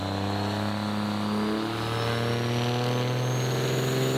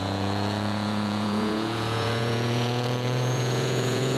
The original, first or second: first